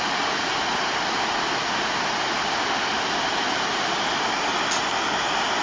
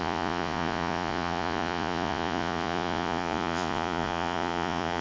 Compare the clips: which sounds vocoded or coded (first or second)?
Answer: second